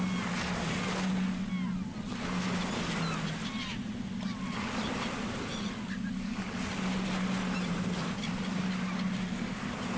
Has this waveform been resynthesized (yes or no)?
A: no